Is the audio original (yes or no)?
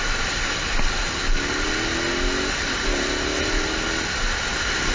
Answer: yes